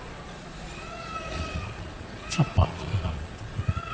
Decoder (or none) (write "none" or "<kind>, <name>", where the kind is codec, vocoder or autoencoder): vocoder, Vocos